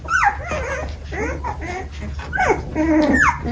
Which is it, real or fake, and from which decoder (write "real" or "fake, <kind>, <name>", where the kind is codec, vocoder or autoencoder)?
real